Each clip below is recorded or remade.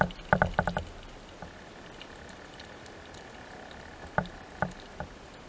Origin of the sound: recorded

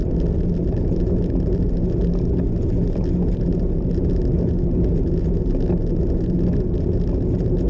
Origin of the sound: recorded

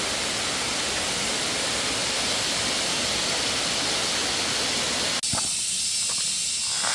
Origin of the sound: recorded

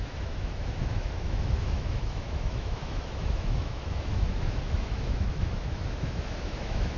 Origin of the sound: remade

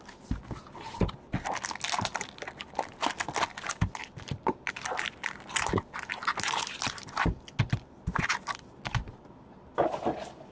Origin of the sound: recorded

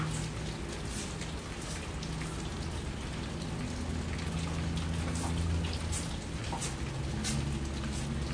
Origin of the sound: recorded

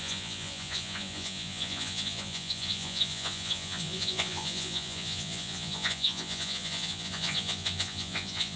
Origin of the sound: remade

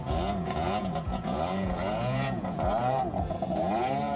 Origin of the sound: remade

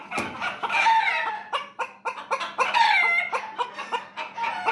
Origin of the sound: recorded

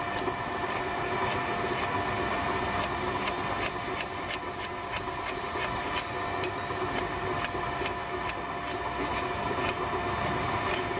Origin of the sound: recorded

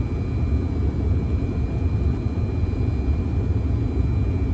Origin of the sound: recorded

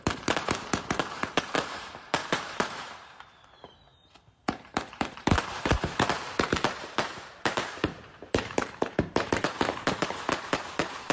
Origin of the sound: remade